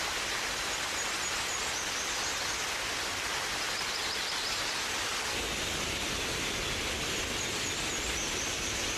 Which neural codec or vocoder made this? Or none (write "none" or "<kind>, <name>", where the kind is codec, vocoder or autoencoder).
none